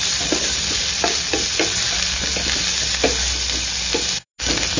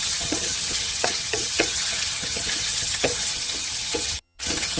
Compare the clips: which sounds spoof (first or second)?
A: second